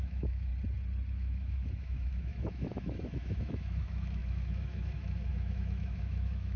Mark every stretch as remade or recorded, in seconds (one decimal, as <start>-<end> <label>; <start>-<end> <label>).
0.0-0.5 remade; 0.5-1.1 recorded; 1.1-6.6 remade